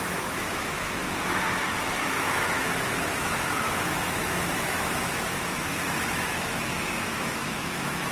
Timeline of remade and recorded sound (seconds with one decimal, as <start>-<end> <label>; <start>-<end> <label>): 0.0-1.0 remade; 1.0-2.0 recorded; 2.0-8.1 remade